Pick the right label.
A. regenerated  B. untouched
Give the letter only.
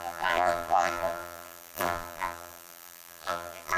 A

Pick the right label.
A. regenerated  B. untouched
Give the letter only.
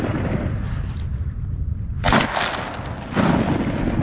B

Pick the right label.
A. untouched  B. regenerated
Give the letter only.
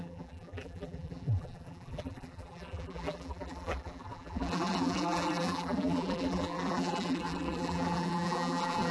B